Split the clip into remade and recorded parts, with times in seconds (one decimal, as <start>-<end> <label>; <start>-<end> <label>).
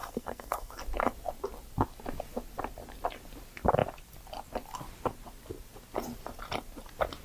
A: 0.0-0.8 remade; 0.8-7.2 recorded